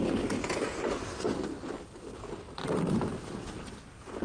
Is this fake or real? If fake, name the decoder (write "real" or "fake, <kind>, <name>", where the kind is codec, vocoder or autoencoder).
real